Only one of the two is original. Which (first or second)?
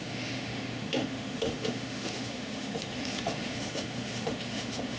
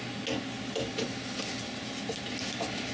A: second